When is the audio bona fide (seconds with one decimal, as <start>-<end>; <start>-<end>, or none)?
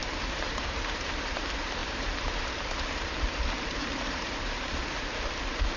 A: 1.4-1.8; 5.3-5.8